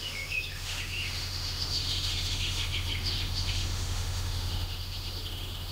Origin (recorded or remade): remade